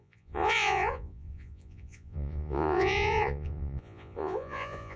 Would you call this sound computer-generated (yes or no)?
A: yes